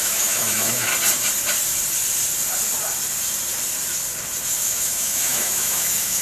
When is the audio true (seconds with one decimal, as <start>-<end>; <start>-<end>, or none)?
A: 0.9-4.5